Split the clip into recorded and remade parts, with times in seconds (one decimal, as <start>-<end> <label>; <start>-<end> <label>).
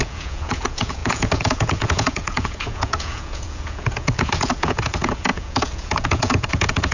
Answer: 0.0-6.9 remade